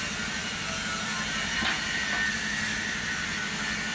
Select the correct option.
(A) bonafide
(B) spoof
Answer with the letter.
B